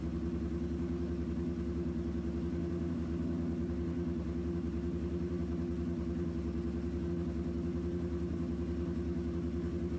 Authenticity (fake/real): real